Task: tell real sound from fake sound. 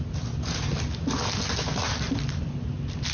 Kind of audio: real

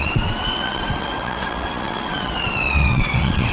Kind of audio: fake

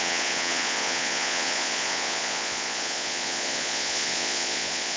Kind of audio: fake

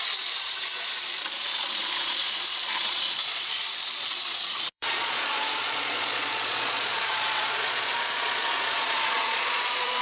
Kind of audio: fake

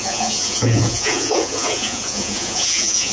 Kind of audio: fake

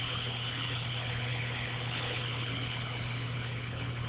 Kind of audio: fake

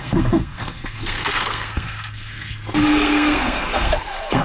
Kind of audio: fake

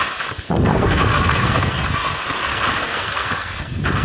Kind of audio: fake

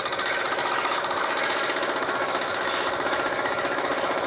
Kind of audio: fake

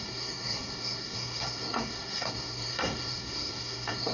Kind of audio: fake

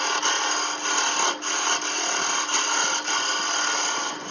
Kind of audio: real